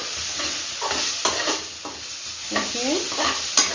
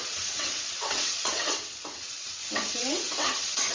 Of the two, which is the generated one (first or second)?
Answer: second